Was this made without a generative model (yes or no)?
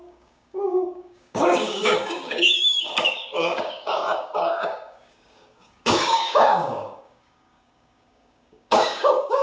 no